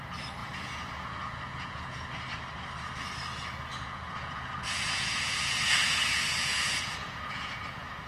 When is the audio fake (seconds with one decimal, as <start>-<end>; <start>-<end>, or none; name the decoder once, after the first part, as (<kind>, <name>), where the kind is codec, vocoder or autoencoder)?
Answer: 0.4-2.1 (vocoder, Vocos); 3.7-8.1